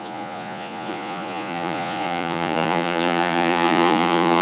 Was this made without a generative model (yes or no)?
no